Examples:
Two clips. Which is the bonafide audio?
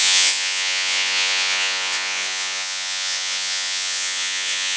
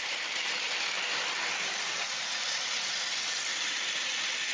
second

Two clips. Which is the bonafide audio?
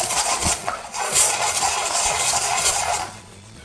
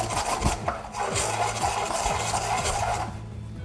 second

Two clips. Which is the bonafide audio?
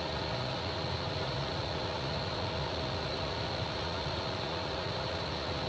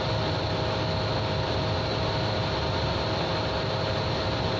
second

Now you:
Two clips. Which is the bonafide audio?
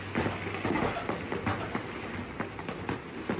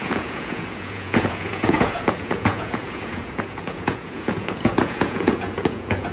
first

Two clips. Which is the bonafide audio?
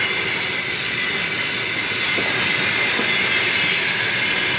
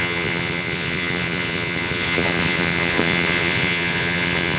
first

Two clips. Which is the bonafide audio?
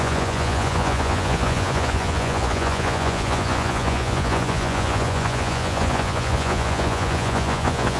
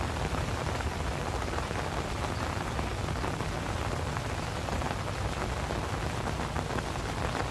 second